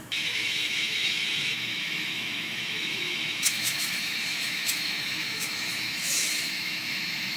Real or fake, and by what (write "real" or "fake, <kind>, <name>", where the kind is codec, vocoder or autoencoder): fake, autoencoder, DAC-VAE